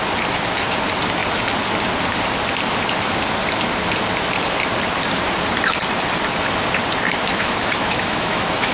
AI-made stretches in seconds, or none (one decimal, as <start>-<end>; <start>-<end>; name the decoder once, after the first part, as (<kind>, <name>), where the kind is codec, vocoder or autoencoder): 7.3-8.7 (autoencoder, DAC-VAE)